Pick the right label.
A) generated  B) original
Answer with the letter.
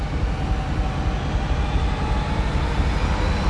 B